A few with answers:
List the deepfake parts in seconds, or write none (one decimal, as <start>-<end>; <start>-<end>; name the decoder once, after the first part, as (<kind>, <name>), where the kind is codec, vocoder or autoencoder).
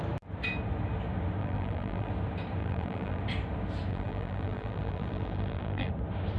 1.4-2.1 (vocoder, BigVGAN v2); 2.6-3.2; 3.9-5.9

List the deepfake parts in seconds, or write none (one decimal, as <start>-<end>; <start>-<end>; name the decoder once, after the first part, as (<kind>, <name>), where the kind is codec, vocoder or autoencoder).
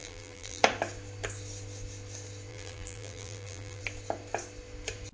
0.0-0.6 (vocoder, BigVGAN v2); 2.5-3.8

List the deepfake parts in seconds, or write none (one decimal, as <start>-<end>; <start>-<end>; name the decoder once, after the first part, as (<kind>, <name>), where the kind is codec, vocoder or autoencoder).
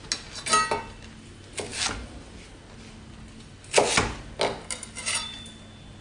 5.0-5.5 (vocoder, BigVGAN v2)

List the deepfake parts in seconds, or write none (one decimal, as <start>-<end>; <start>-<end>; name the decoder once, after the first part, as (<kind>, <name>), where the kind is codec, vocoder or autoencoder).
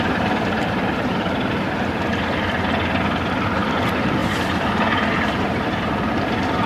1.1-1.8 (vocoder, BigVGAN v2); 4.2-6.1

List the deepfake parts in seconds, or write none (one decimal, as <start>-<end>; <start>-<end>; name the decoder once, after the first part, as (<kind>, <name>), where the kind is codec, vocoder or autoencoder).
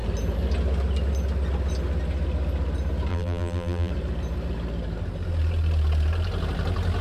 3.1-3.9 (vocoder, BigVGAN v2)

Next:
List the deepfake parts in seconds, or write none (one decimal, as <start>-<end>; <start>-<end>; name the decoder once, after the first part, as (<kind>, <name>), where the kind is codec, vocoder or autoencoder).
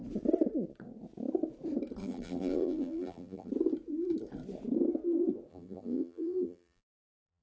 2.0-3.5 (vocoder, BigVGAN v2); 5.5-7.4